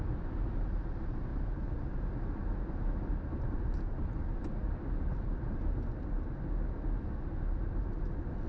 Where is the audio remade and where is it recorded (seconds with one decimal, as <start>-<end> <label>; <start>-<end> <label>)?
0.0-4.6 recorded; 4.6-5.6 remade; 5.6-8.5 recorded